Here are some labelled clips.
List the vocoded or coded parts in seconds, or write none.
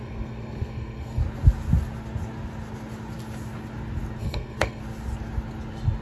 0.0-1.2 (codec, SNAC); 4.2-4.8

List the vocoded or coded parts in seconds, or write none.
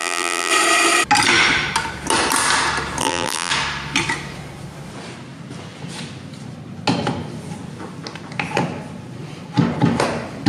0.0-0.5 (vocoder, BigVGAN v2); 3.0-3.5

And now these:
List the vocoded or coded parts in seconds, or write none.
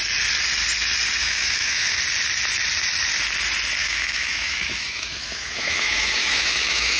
1.2-2.0 (autoencoder, DAC-VAE); 3.8-7.0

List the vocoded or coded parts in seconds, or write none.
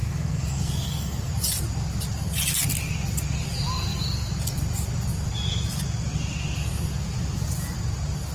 0.0-1.3 (codec, SNAC)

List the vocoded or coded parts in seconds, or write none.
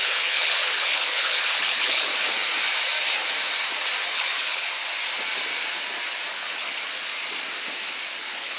0.0-2.1 (codec, HILCodec); 4.1-4.6; 6.3-6.8; 8.2-8.6